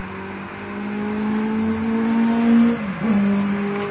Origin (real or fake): real